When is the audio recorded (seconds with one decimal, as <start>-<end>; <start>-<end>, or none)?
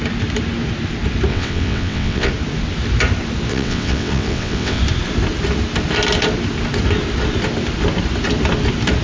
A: 0.0-1.3; 2.3-3.5; 4.8-9.0